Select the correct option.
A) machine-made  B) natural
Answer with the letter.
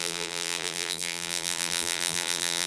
A